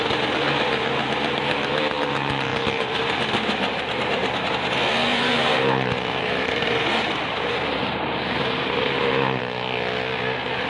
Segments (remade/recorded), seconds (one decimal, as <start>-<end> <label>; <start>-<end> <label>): 0.0-2.5 recorded; 2.5-4.5 remade; 4.5-5.1 recorded; 5.1-9.4 remade; 9.4-10.7 recorded